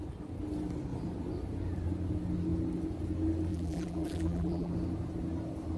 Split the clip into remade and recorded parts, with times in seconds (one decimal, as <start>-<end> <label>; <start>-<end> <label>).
0.0-3.5 recorded; 3.5-4.7 remade; 4.7-5.8 recorded